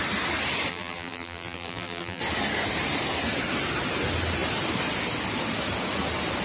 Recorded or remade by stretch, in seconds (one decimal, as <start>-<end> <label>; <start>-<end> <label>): 0.0-0.7 recorded; 0.7-2.2 remade; 2.2-6.4 recorded

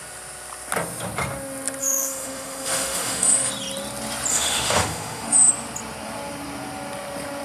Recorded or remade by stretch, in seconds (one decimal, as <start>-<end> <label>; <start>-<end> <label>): 0.0-1.8 recorded; 1.8-3.5 remade; 3.5-4.3 recorded; 4.3-5.5 remade; 5.5-7.4 recorded

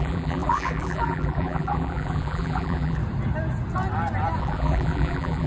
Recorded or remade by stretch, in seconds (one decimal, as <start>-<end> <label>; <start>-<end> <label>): 0.0-3.0 remade; 3.0-4.4 recorded; 4.4-5.5 remade

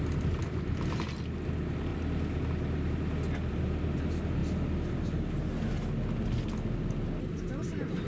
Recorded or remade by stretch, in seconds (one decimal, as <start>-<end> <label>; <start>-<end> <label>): 0.0-8.1 recorded

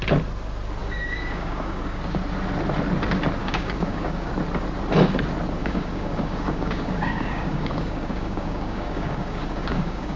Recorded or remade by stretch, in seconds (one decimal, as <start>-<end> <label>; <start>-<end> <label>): 0.0-0.8 recorded; 0.8-2.0 remade; 2.0-3.4 recorded; 3.4-4.3 remade; 4.3-5.6 recorded; 5.6-10.2 remade

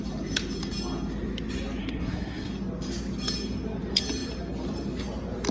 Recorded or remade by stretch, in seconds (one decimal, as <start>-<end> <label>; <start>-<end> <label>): 0.0-1.8 recorded; 1.8-2.5 remade; 2.5-5.5 recorded